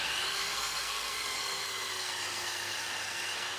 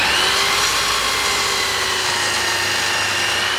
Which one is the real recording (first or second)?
second